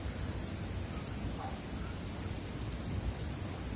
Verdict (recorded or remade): recorded